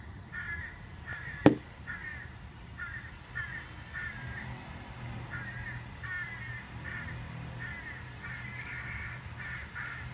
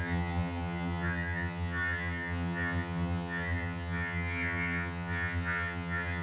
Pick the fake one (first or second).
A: second